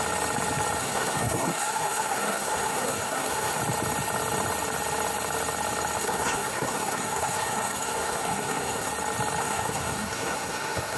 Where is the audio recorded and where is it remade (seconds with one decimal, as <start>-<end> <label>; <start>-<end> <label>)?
0.0-0.8 recorded; 0.8-3.6 remade; 3.6-6.0 recorded; 6.0-8.9 remade; 8.9-9.4 recorded; 9.4-11.0 remade